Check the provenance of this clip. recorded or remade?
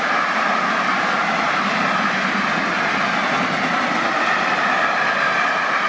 recorded